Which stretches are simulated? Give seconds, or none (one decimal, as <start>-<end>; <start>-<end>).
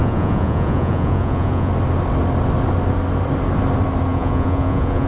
0.0-1.7; 4.1-5.1